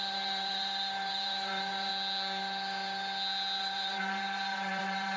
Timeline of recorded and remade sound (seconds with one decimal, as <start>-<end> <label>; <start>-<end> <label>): 0.0-1.9 remade; 1.9-3.6 recorded; 3.6-5.2 remade